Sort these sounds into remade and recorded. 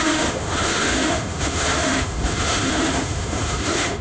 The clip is remade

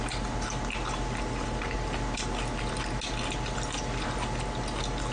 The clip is recorded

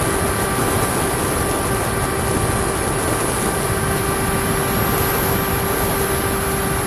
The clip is recorded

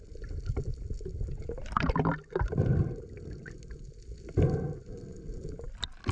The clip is recorded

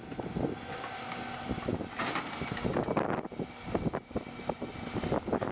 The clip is recorded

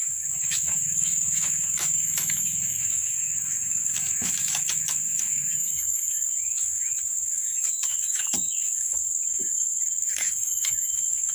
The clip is remade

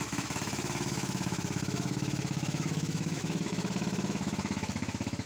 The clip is remade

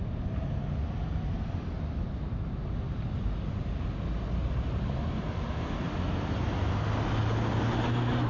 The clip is recorded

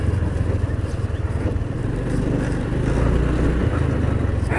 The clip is recorded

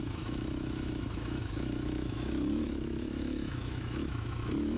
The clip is remade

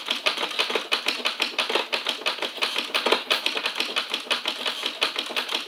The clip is recorded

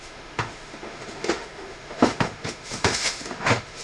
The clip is remade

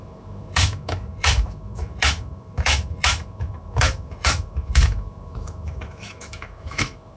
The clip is remade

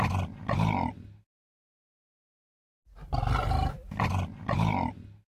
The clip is recorded